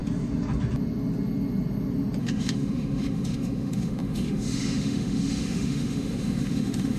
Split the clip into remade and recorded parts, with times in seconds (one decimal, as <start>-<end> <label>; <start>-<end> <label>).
0.0-2.2 recorded; 2.2-7.0 remade